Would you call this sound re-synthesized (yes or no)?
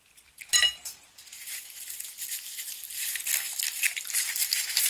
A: no